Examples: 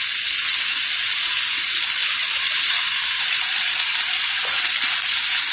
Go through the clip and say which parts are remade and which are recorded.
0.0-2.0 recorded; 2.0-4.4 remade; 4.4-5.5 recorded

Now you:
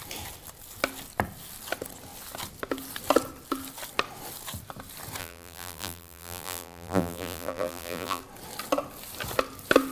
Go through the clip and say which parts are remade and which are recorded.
0.0-5.2 recorded; 5.2-8.2 remade; 8.2-9.9 recorded

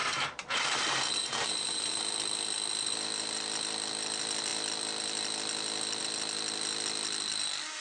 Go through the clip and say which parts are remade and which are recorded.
0.0-2.0 remade; 2.0-7.8 recorded